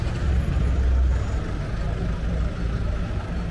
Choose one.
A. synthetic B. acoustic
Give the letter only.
B